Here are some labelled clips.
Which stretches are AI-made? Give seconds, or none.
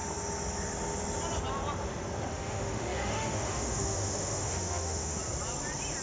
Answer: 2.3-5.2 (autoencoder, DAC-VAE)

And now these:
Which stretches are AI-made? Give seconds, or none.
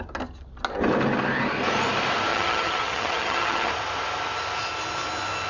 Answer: 2.3-3.7 (vocoder, HiFi-GAN)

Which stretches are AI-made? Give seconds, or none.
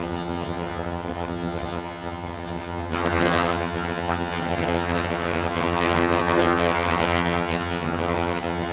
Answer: 0.0-8.7 (vocoder, HiFi-GAN)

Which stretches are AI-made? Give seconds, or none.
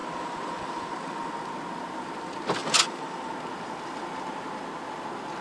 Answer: 0.0-1.3 (vocoder, BigVGAN v2); 2.6-3.2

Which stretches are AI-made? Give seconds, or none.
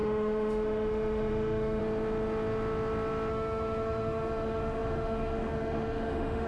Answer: 0.0-1.8 (autoencoder, DAC-VAE); 3.3-6.5